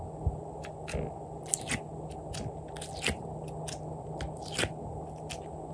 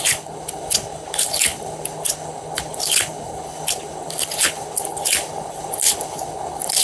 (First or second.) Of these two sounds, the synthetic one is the second